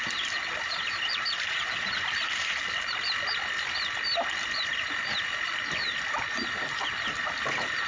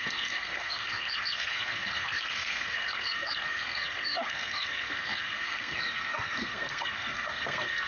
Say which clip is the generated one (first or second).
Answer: second